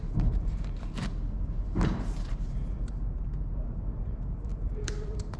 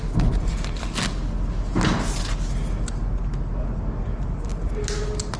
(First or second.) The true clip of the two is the second